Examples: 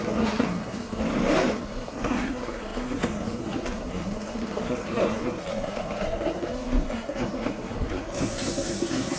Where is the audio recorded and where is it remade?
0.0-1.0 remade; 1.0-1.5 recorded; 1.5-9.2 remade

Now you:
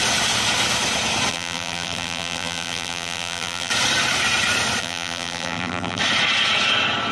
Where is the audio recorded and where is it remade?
0.0-1.3 recorded; 1.3-3.7 remade; 3.7-4.8 recorded; 4.8-6.0 remade; 6.0-7.1 recorded

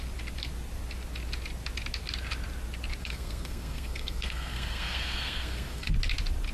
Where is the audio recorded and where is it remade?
0.0-3.0 recorded; 3.0-5.9 remade; 5.9-6.5 recorded

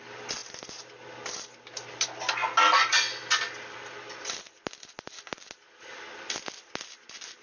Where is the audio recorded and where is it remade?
0.0-7.4 recorded